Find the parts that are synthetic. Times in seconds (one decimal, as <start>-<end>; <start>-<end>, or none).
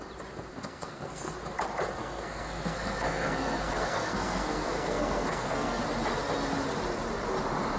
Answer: 0.5-1.3; 2.0-5.8